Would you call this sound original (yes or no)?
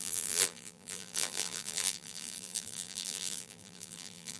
no